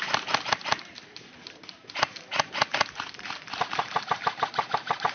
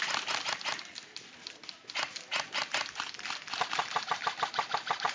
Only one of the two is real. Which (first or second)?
second